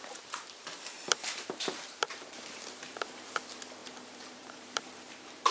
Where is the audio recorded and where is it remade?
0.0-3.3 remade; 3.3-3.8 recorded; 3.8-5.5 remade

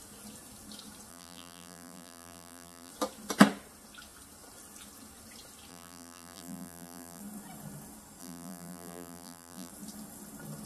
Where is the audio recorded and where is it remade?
0.0-1.1 recorded; 1.1-2.9 remade; 2.9-5.7 recorded; 5.7-7.2 remade; 7.2-8.2 recorded; 8.2-9.7 remade; 9.7-10.7 recorded